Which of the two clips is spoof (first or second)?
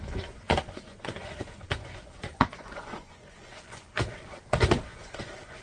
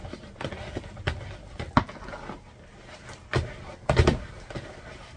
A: first